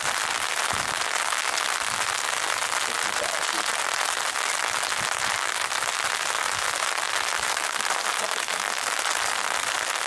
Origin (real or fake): real